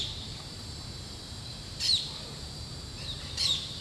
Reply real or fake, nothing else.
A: fake